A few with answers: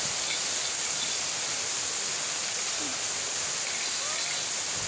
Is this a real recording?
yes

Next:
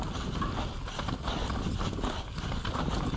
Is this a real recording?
yes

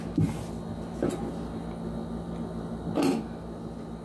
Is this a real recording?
yes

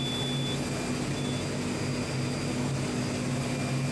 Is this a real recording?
yes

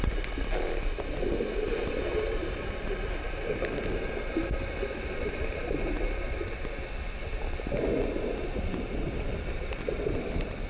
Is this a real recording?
yes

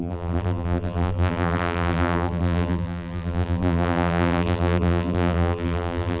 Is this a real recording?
no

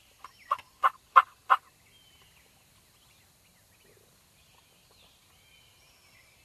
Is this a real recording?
yes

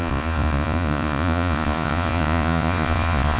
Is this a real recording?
no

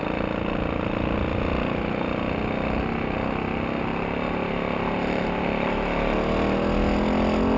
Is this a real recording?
yes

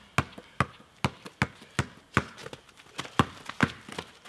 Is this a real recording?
yes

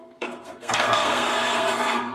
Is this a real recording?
no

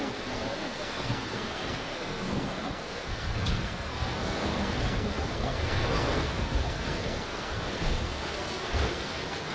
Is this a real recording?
no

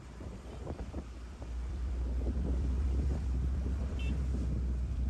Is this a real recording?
no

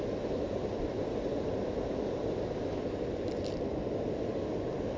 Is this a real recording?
yes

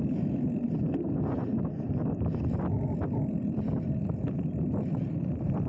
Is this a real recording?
yes